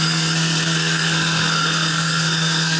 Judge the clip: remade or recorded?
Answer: remade